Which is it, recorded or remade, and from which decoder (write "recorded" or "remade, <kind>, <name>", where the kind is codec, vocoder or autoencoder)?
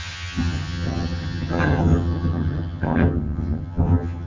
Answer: remade, vocoder, HiFi-GAN